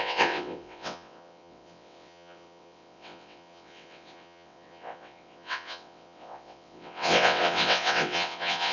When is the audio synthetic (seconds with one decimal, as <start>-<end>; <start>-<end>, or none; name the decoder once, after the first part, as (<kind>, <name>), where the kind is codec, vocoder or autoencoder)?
0.0-8.7 (vocoder, WaveNeXt)